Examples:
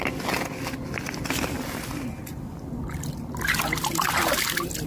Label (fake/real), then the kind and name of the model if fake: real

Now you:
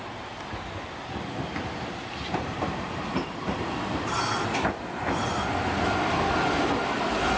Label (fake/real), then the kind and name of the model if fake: real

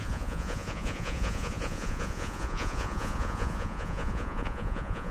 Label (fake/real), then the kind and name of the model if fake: fake, vocoder, Vocos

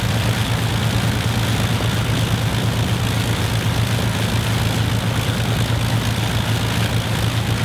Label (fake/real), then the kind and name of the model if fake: real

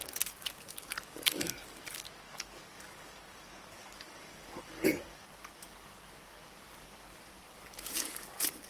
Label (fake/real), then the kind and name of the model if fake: fake, codec, DAC